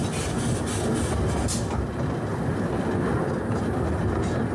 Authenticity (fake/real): real